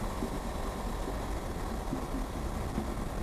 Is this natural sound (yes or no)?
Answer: yes